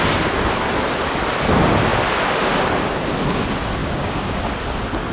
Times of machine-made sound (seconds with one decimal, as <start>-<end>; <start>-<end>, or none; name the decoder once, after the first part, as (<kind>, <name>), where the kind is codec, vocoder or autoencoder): 3.8-4.4 (codec, DAC)